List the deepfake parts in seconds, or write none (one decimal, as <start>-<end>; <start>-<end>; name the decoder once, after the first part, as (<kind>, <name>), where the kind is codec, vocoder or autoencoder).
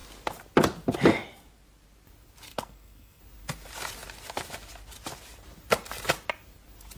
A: 2.5-3.2 (codec, SNAC)